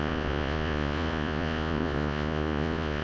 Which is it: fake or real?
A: fake